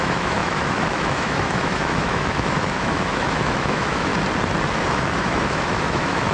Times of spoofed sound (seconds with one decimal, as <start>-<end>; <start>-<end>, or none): 0.0-4.1; 4.8-6.3

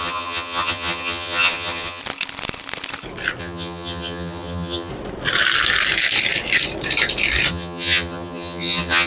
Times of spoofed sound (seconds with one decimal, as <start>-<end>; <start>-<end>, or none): 0.0-2.0; 3.4-4.9; 7.5-9.1

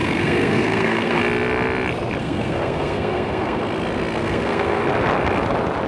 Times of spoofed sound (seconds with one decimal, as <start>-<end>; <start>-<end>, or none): 0.0-1.2; 2.2-3.6; 4.2-4.8

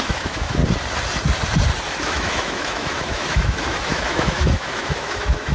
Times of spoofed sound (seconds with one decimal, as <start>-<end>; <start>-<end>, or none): 0.0-0.6; 2.0-5.5

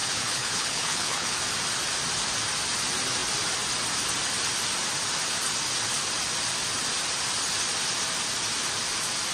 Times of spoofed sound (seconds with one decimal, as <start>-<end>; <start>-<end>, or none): 0.0-1.4

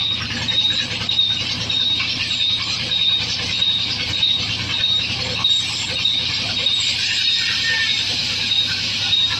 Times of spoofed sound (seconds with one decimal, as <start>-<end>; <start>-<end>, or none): 0.0-9.4

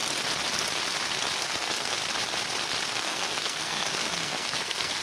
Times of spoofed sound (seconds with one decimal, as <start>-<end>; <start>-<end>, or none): 1.4-2.0; 2.9-5.0